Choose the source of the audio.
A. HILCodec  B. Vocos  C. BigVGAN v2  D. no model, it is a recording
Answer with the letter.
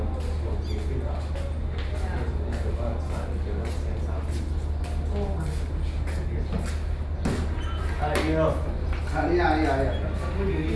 D